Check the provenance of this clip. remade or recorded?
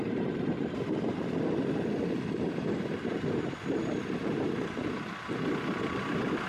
recorded